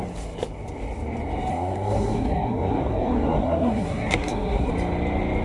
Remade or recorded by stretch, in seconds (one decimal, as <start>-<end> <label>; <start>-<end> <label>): 0.0-1.5 recorded; 1.5-4.7 remade; 4.7-5.4 recorded